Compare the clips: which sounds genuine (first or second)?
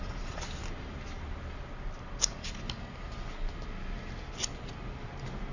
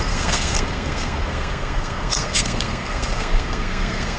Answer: first